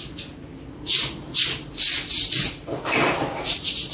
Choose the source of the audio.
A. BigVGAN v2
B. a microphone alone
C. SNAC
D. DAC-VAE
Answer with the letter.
B